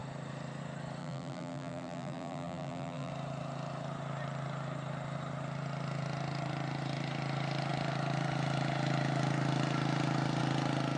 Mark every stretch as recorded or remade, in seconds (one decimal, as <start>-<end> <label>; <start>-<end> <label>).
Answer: 0.0-1.0 recorded; 1.0-3.1 remade; 3.1-11.0 recorded